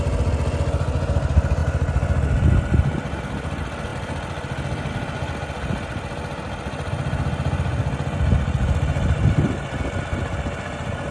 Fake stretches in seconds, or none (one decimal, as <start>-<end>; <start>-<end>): none